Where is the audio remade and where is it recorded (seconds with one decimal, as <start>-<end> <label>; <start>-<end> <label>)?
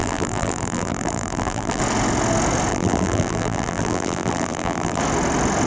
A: 0.0-1.8 remade; 1.8-2.7 recorded; 2.7-5.0 remade; 5.0-5.7 recorded